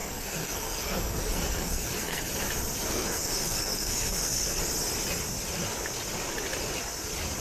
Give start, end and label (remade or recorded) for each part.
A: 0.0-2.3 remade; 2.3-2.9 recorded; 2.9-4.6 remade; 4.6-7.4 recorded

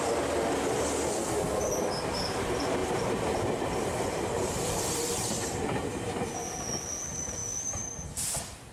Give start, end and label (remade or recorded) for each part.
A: 0.0-2.8 recorded; 2.8-6.1 remade; 6.1-8.7 recorded

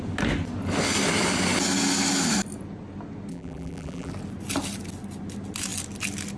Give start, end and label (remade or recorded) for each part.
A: 0.0-3.3 recorded; 3.3-4.1 remade; 4.1-6.4 recorded